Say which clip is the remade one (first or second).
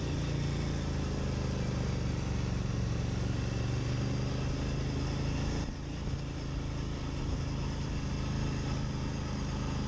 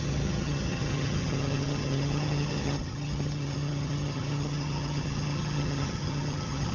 second